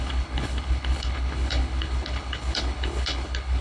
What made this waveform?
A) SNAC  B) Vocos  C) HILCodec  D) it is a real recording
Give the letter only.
C